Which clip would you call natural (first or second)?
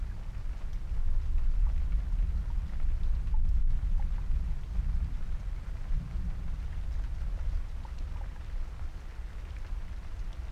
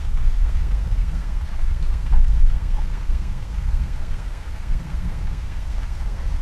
first